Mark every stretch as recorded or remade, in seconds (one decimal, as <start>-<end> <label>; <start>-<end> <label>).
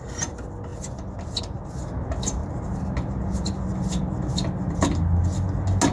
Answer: 0.0-5.9 recorded